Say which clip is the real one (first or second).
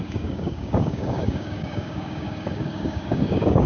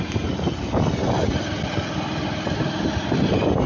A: second